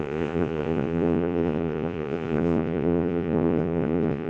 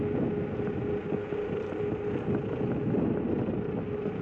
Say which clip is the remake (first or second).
first